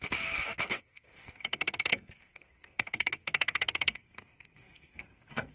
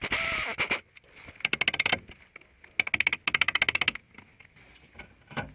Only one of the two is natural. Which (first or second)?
second